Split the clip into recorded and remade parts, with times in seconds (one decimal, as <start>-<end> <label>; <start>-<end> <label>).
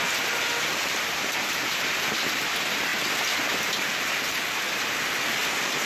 0.0-5.9 recorded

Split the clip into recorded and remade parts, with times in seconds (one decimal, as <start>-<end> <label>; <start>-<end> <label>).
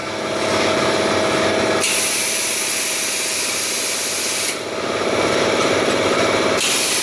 0.0-4.2 recorded; 4.2-7.0 remade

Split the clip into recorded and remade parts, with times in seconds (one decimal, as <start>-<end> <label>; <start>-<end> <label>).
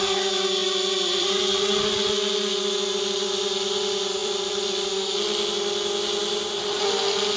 0.0-0.6 recorded; 0.6-1.4 remade; 1.4-4.2 recorded; 4.2-4.8 remade; 4.8-6.2 recorded; 6.2-6.8 remade; 6.8-7.4 recorded